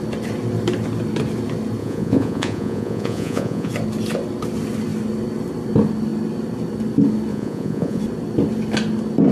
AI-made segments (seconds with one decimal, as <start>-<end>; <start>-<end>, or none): 1.8-3.7; 7.3-8.0